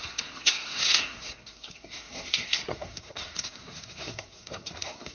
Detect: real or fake fake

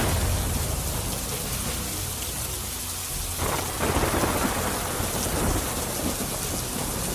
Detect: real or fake real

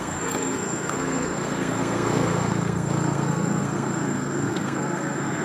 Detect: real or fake fake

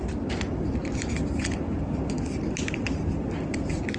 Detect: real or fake real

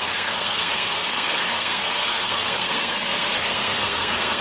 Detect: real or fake fake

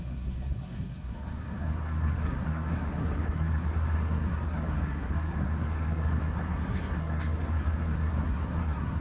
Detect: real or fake fake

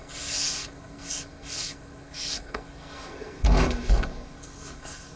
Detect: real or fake fake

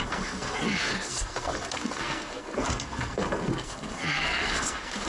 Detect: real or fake fake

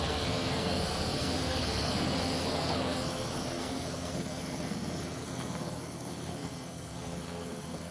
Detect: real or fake fake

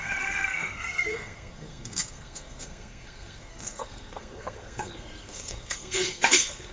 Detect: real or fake fake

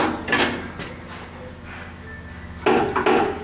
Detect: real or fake real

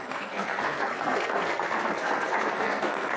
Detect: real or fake fake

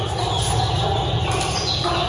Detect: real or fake real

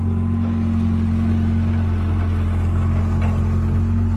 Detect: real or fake real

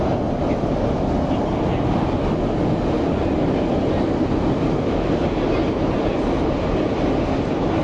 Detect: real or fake real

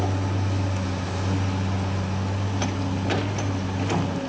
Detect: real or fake real